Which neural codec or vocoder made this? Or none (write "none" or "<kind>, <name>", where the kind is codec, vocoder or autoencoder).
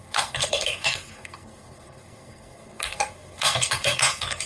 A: codec, SNAC